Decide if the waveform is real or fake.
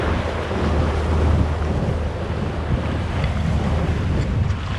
real